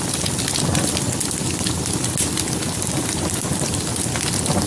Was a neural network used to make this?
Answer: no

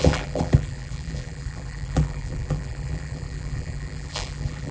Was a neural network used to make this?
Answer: yes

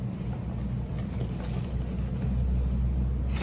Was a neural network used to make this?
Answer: no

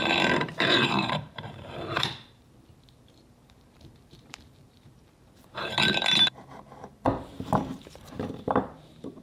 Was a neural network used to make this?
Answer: yes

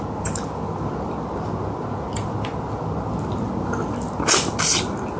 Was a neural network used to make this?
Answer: no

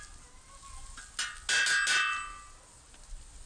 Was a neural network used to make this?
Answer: no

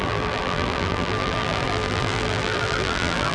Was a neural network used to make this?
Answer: yes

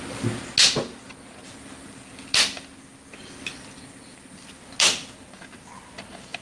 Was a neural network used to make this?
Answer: no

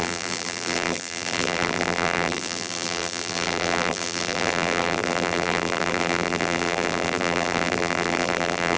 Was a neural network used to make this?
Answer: yes